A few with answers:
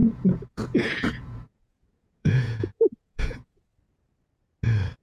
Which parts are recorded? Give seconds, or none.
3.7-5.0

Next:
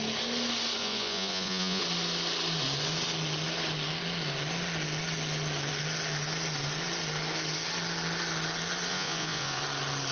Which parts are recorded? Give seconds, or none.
0.0-0.8; 1.8-8.9; 9.6-10.1